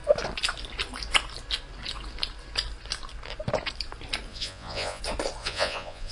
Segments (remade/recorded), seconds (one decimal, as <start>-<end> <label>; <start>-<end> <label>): 0.0-4.3 recorded; 4.3-5.0 remade; 5.0-5.4 recorded; 5.4-6.1 remade